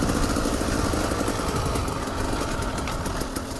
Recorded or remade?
recorded